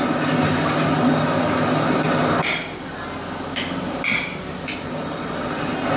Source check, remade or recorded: recorded